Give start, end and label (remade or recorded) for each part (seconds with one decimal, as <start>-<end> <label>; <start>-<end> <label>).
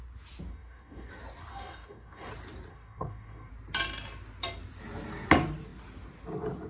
0.0-0.5 recorded; 0.5-1.1 remade; 1.1-1.5 recorded; 1.5-2.3 remade; 2.3-2.7 recorded; 2.7-3.5 remade; 3.5-6.7 recorded